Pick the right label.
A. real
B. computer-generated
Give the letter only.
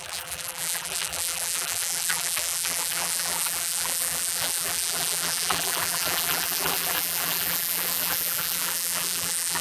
B